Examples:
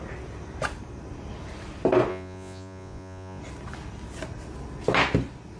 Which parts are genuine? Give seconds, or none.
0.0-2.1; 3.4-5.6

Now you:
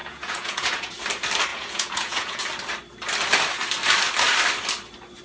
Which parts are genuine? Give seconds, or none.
0.9-1.5; 2.4-5.2

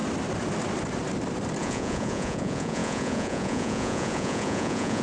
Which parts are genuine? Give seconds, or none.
0.0-1.6

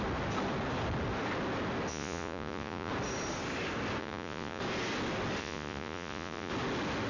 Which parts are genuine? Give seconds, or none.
0.0-1.9; 2.9-4.0; 4.6-5.4; 6.5-7.1

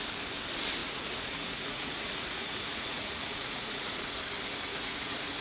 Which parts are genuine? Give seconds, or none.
0.0-0.8; 4.0-4.7